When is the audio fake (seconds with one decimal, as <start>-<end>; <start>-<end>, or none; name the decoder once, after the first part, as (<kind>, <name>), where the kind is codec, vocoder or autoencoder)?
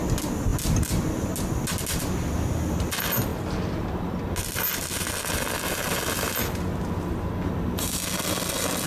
none